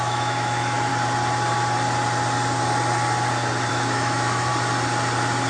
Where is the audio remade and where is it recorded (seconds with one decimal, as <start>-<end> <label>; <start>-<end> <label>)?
0.0-0.9 remade; 0.9-3.7 recorded; 3.7-4.5 remade; 4.5-5.5 recorded